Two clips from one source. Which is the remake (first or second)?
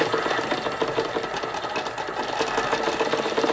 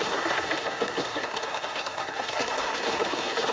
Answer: second